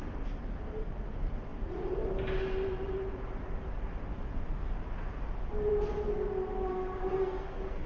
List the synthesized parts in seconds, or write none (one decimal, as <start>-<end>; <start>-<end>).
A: 6.7-7.9